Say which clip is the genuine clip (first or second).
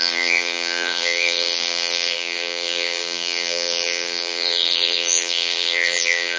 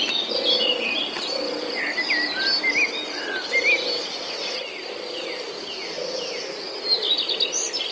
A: second